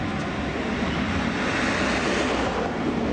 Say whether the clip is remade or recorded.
recorded